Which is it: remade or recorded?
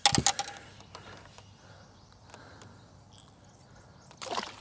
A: recorded